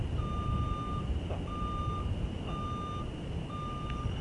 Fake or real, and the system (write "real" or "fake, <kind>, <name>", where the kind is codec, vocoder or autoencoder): real